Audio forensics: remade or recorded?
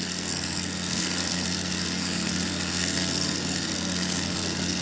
remade